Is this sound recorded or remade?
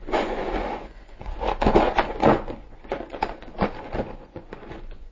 remade